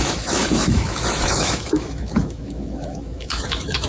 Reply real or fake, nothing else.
fake